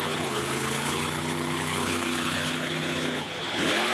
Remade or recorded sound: remade